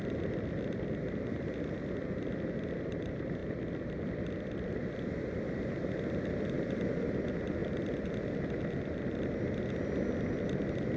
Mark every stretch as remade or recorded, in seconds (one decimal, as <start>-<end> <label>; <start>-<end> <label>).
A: 0.0-11.0 recorded